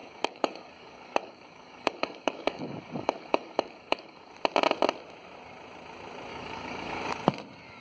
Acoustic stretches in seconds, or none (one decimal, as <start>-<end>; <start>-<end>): 4.3-6.3; 7.0-7.8